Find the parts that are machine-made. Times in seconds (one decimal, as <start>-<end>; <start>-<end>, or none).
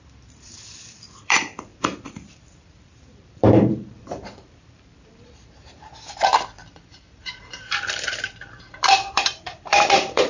0.0-5.9; 6.7-10.3